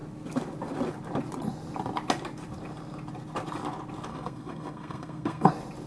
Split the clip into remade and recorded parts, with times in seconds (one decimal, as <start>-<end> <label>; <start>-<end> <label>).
0.0-4.1 recorded; 4.1-5.5 remade; 5.5-5.9 recorded

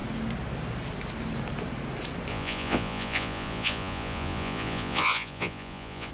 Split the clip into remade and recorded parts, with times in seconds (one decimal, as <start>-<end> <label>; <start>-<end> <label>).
0.0-2.3 recorded; 2.3-6.1 remade

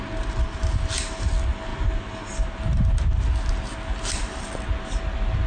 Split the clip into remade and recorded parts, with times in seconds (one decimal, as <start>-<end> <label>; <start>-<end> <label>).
0.0-5.5 recorded

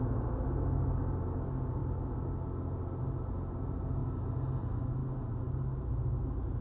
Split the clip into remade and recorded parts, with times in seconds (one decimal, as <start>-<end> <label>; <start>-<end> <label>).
0.0-6.6 recorded

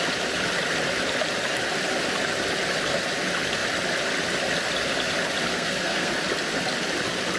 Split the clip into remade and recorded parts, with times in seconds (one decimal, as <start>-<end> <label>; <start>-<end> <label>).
0.0-5.5 recorded; 5.5-6.1 remade; 6.1-7.4 recorded

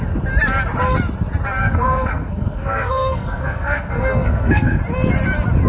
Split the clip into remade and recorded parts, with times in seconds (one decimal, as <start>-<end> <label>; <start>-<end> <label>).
0.0-1.6 recorded; 1.6-4.8 remade; 4.8-5.7 recorded

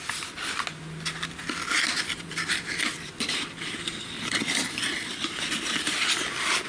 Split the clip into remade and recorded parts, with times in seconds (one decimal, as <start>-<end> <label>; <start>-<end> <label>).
0.0-1.4 recorded; 1.4-5.4 remade; 5.4-6.7 recorded